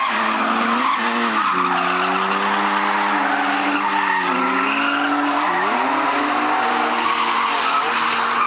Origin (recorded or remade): recorded